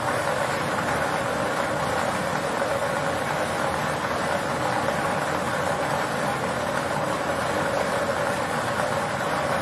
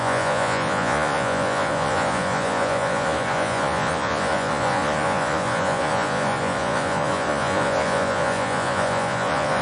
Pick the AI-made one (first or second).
second